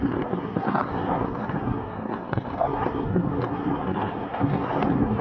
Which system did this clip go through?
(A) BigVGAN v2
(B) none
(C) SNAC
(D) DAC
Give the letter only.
C